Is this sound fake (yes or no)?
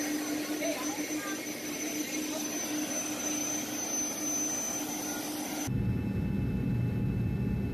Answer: no